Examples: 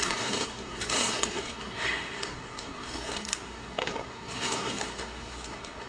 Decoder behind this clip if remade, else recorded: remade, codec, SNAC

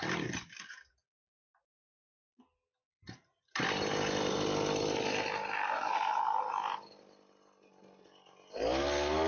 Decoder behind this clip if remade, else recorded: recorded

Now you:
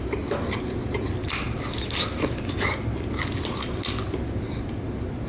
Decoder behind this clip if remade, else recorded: recorded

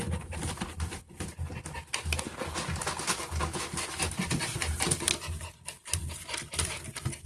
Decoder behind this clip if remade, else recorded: recorded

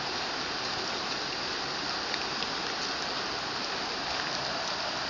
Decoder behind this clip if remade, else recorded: recorded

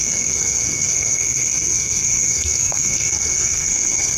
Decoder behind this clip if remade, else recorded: remade, codec, SNAC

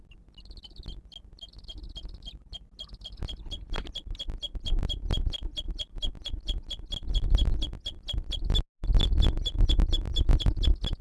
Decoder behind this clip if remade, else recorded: recorded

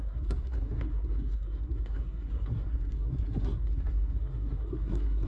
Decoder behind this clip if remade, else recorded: remade, codec, SNAC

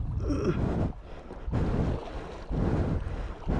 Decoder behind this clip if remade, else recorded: recorded